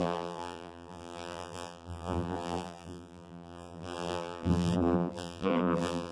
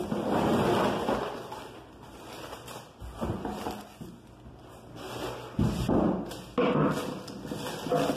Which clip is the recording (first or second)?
second